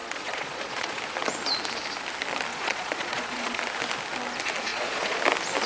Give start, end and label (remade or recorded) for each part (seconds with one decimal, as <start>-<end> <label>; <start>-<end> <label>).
0.0-1.0 remade; 1.0-2.5 recorded; 2.5-3.6 remade; 3.6-4.7 recorded; 4.7-5.2 remade; 5.2-5.7 recorded